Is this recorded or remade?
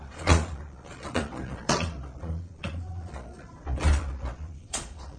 remade